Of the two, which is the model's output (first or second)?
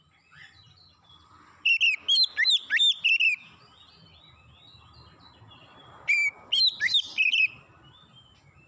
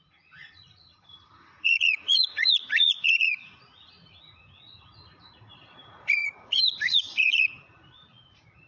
second